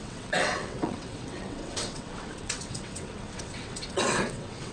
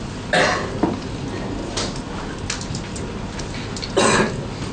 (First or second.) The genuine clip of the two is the second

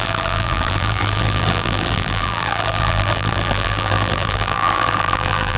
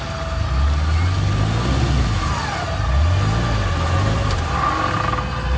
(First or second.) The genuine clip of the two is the second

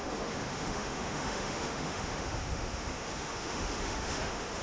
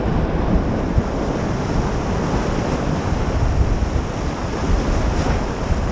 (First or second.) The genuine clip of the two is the second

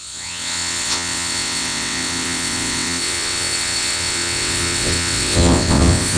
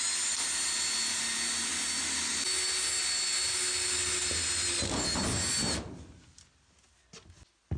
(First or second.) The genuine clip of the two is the second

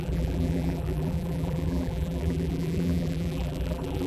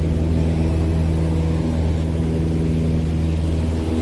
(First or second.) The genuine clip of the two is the second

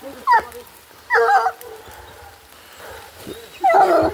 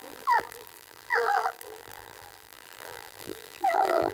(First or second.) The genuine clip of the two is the first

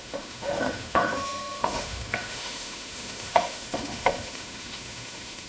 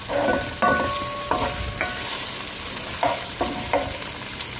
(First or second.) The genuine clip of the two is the second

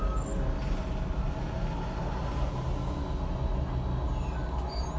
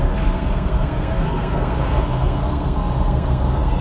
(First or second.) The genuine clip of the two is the first